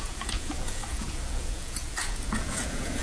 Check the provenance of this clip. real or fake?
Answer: fake